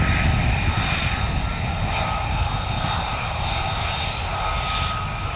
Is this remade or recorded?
recorded